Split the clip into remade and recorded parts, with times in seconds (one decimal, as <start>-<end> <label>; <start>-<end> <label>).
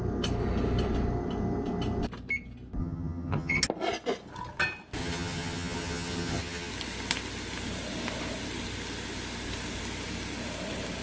0.0-2.8 recorded; 2.8-3.6 remade; 3.6-5.0 recorded; 5.0-6.7 remade; 6.7-11.0 recorded